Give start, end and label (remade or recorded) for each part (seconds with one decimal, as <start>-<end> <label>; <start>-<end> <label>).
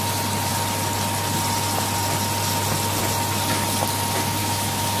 0.0-4.4 recorded; 4.4-5.0 remade